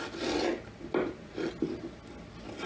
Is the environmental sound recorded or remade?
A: recorded